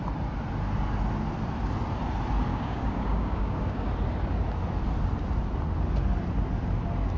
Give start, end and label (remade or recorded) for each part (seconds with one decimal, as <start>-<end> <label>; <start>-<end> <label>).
0.0-2.5 recorded; 2.5-3.9 remade; 3.9-7.2 recorded